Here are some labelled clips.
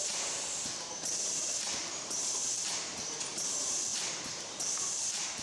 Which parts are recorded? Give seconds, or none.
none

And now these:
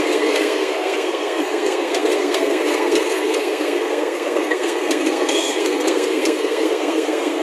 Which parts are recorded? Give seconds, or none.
none

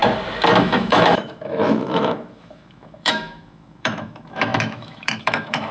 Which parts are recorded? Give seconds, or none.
0.0-0.6